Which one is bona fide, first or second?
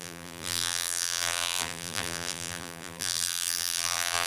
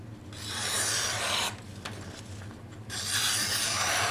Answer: second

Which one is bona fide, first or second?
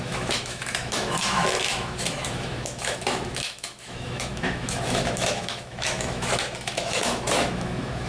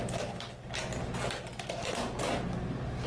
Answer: second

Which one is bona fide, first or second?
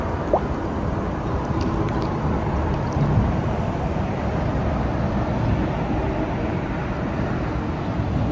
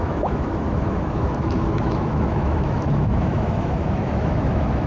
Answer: first